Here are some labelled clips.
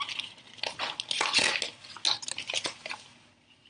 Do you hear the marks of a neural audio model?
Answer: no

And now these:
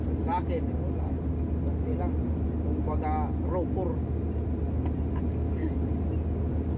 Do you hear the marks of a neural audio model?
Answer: no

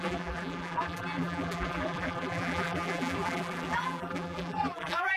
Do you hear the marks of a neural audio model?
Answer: yes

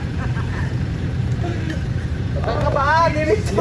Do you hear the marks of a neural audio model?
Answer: yes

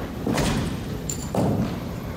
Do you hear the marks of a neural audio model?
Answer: yes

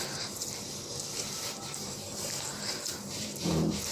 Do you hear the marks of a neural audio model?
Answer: yes